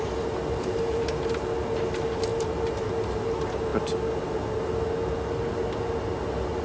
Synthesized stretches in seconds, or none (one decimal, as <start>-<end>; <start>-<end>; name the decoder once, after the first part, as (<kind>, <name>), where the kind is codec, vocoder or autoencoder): none